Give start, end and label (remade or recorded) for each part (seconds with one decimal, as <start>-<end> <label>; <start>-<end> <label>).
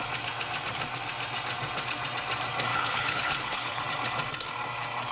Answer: 0.0-2.7 recorded; 2.7-3.8 remade; 3.8-5.1 recorded